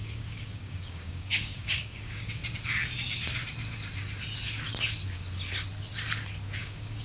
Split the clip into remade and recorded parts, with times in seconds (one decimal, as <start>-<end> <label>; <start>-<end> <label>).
0.0-2.4 remade; 2.4-6.6 recorded; 6.6-7.0 remade